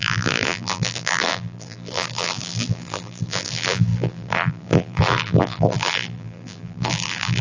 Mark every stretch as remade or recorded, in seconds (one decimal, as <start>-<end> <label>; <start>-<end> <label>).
0.0-7.4 remade